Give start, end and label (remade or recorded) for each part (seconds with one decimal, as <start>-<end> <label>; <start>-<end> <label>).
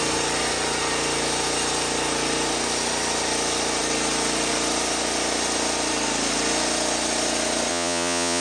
0.0-7.7 recorded; 7.7-8.4 remade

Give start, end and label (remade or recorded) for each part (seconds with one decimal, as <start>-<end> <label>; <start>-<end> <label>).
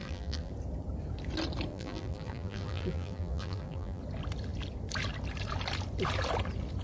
0.0-0.5 remade; 0.5-1.7 recorded; 1.7-4.0 remade; 4.0-6.8 recorded